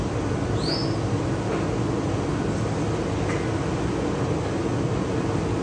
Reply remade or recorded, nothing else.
recorded